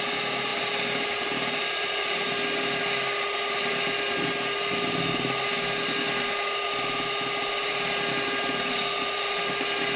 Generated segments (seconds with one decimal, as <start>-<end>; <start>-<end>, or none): none